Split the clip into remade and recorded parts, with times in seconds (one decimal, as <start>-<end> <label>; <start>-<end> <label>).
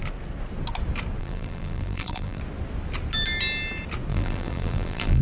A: 0.0-1.2 recorded; 1.2-2.4 remade; 2.4-4.1 recorded; 4.1-5.2 remade